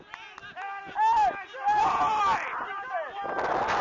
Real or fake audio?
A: real